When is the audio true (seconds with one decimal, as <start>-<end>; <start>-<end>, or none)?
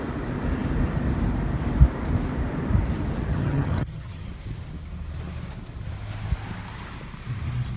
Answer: 0.0-3.3; 4.3-7.8